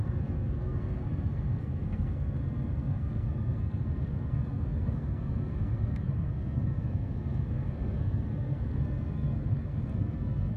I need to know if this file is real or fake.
fake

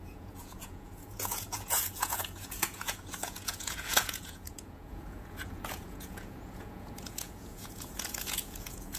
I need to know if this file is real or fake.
fake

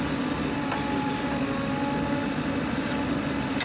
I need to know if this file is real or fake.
real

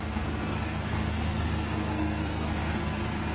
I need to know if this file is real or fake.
fake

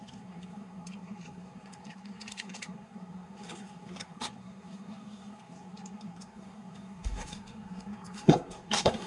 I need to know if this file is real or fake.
fake